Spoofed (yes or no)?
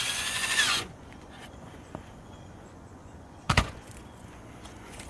yes